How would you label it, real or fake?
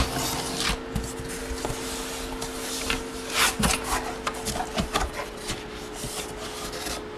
real